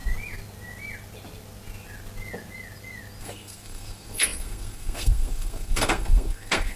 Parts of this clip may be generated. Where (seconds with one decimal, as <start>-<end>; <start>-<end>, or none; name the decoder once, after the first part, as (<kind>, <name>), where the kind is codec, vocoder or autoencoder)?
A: 3.2-6.8 (codec, SNAC)